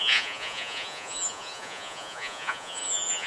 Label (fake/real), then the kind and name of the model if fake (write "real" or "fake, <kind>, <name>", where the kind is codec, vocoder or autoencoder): fake, vocoder, Vocos